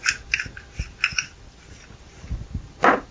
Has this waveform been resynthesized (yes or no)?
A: no